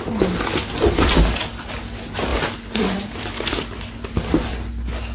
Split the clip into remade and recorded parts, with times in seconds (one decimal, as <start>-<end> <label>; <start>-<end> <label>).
0.0-5.1 recorded